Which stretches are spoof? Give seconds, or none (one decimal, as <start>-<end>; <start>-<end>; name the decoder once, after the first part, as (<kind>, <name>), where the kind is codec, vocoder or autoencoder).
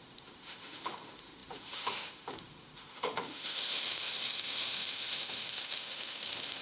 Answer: 0.0-6.6 (autoencoder, DAC-VAE)